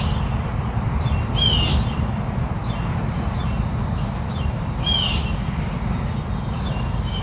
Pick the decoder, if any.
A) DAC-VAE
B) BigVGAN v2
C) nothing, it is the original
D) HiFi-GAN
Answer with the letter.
C